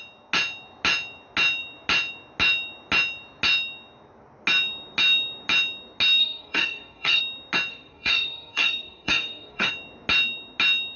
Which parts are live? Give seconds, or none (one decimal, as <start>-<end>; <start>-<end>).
0.0-6.2; 7.2-7.7; 9.7-11.0